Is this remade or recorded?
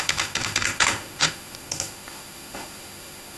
remade